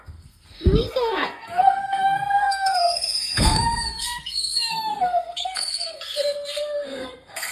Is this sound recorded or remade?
remade